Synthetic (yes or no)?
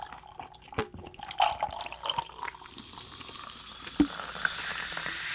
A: no